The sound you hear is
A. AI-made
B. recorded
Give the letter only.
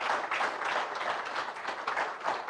B